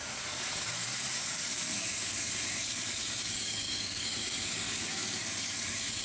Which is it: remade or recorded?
remade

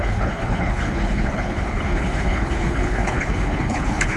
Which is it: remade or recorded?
remade